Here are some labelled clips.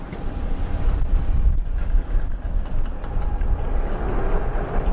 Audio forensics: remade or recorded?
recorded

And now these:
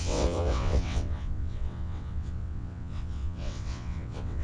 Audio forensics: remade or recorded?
remade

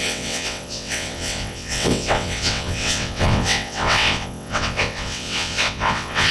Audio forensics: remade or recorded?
remade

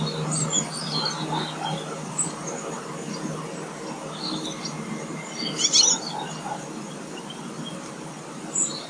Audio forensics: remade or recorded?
recorded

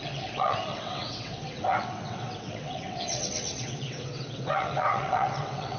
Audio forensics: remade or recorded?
remade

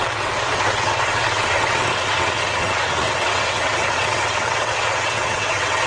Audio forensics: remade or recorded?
remade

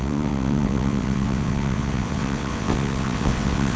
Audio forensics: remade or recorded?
remade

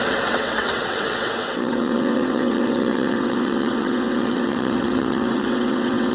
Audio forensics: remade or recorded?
remade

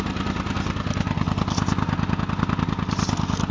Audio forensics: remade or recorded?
recorded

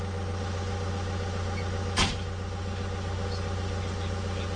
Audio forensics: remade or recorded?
recorded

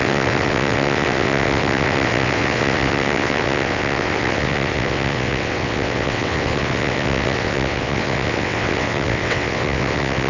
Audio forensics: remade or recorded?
remade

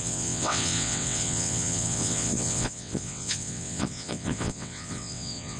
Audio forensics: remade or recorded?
remade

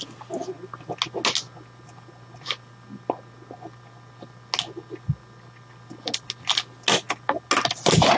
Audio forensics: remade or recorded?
recorded